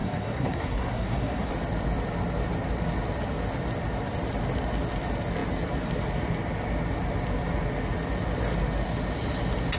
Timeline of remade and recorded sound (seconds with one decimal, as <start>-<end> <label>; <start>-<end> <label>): 0.0-1.5 remade; 1.5-9.8 recorded